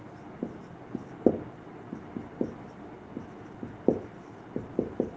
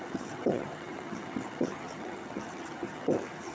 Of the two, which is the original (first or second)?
first